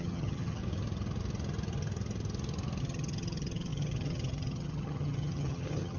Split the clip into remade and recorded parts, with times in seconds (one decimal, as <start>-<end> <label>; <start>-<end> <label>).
0.0-0.6 remade; 0.6-2.8 recorded; 2.8-6.0 remade